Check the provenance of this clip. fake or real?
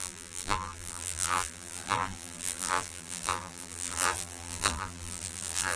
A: fake